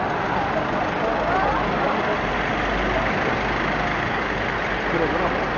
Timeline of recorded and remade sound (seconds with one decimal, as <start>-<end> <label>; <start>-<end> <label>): 0.0-3.9 recorded; 3.9-4.4 remade; 4.4-5.6 recorded